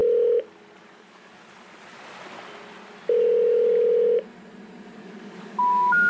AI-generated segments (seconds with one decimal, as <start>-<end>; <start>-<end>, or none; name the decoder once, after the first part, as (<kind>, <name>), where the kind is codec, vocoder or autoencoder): 0.8-1.3 (codec, DAC); 5.0-6.1